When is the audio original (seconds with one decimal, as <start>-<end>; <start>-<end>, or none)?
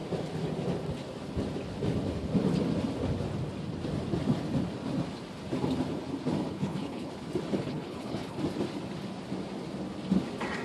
0.0-6.4; 7.1-7.6; 8.4-10.6